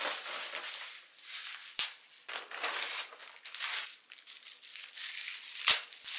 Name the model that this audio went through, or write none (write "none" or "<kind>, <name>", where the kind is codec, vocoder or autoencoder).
none